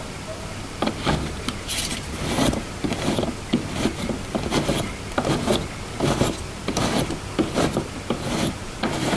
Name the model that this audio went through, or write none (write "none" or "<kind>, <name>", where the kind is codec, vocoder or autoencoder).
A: vocoder, BigVGAN v2